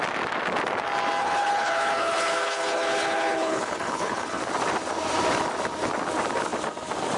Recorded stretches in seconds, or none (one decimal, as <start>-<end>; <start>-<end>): 0.0-1.2; 4.4-7.2